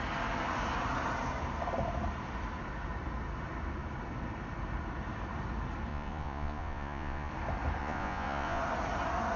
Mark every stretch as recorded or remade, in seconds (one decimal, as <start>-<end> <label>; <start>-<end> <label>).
0.0-5.9 recorded; 5.9-7.3 remade; 7.3-7.8 recorded; 7.8-8.6 remade; 8.6-9.4 recorded